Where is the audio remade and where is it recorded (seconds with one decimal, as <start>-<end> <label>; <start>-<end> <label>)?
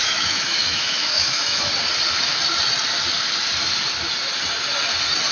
0.0-1.7 remade; 1.7-5.3 recorded